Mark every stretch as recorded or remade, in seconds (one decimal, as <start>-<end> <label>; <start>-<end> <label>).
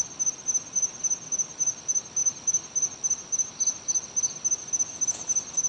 0.0-5.7 recorded